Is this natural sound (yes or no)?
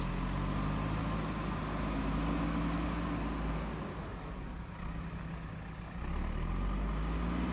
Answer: yes